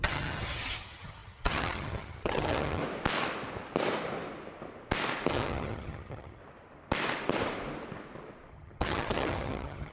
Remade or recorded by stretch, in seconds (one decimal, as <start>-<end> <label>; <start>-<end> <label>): 0.0-2.8 remade; 2.8-5.3 recorded; 5.3-6.4 remade; 6.4-8.5 recorded; 8.5-9.9 remade

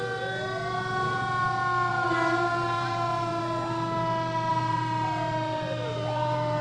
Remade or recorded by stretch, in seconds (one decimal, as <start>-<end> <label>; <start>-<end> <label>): 0.0-1.9 recorded; 1.9-3.4 remade; 3.4-4.5 recorded; 4.5-6.6 remade

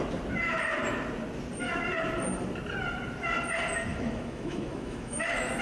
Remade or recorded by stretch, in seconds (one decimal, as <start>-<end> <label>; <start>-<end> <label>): 0.0-3.9 recorded; 3.9-5.6 remade

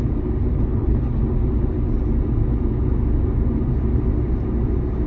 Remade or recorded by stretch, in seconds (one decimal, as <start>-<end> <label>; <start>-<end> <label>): 0.0-0.5 recorded; 0.5-1.2 remade; 1.2-5.1 recorded